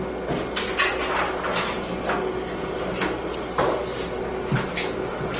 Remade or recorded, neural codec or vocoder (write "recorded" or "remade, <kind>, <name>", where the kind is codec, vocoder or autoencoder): recorded